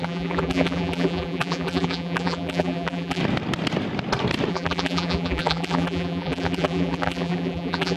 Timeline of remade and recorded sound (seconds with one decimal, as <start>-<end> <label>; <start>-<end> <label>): 0.0-3.2 remade; 3.2-4.5 recorded; 4.5-8.0 remade